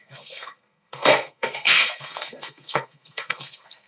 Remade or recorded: remade